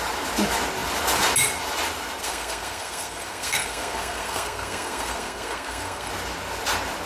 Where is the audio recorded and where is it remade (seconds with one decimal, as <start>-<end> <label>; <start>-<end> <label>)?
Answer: 0.0-2.2 recorded; 2.2-6.1 remade; 6.1-7.1 recorded